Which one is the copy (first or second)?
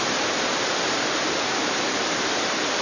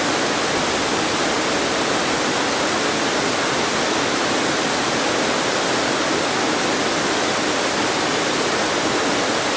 first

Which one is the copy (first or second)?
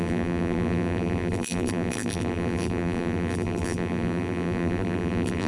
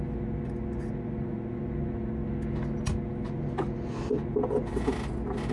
first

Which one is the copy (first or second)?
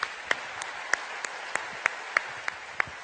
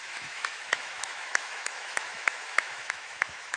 second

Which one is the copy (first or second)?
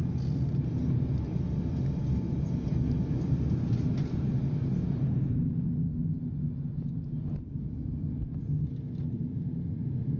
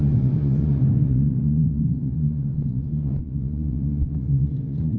second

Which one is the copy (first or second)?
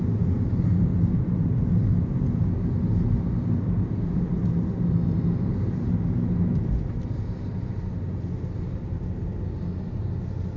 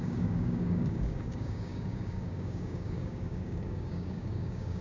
second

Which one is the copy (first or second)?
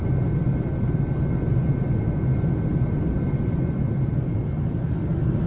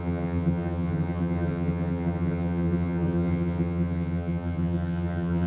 second